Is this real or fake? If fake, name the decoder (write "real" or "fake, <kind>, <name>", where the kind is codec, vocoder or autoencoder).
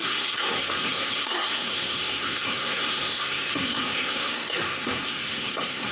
fake, codec, SNAC